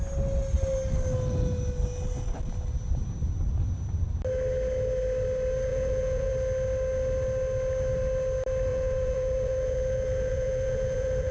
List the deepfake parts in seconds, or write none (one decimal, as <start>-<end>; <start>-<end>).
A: 5.7-6.3; 8.7-11.3